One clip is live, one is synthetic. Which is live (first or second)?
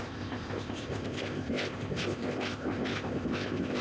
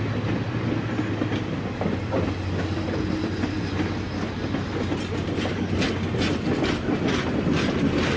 second